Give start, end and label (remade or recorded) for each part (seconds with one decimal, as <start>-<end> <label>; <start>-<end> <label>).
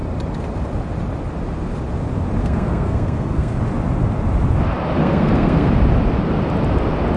0.0-2.4 recorded; 2.4-3.6 remade; 3.6-5.0 recorded; 5.0-5.7 remade; 5.7-7.2 recorded